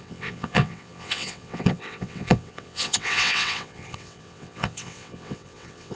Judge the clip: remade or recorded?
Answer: remade